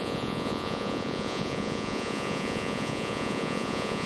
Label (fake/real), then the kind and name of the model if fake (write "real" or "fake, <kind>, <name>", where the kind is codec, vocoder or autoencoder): fake, vocoder, Vocos